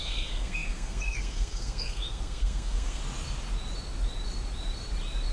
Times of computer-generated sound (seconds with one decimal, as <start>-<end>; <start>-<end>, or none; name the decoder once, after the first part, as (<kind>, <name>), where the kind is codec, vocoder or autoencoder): 0.0-3.0 (codec, SNAC)

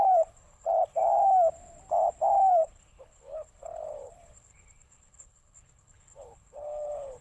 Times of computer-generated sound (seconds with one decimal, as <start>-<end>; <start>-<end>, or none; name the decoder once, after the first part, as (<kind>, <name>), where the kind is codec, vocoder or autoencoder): 0.0-1.0 (codec, HILCodec); 2.5-7.2